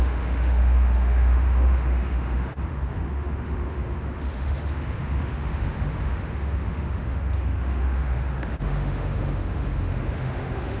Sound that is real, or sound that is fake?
fake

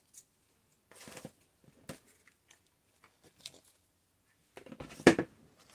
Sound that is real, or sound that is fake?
real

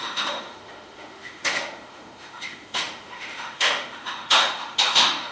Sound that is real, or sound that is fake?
fake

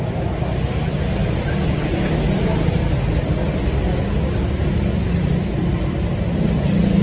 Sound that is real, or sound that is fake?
real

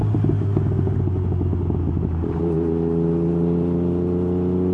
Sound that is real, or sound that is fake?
real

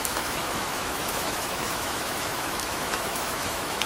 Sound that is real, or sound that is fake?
fake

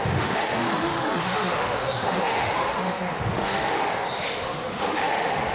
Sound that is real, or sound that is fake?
fake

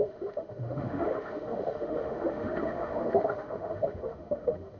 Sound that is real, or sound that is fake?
fake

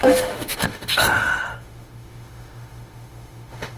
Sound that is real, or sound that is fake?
fake